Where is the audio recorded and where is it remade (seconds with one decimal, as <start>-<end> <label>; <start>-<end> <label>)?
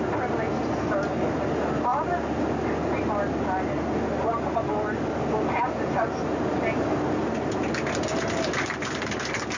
0.0-9.6 recorded